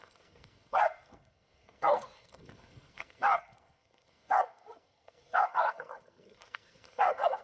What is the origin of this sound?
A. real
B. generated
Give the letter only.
B